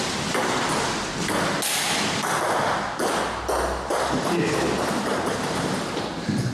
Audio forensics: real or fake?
real